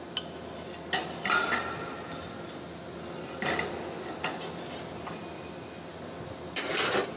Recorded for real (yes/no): yes